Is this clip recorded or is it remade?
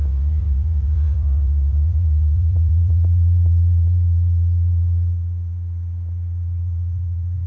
remade